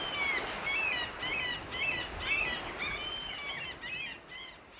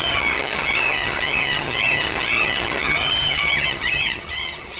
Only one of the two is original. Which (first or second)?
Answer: first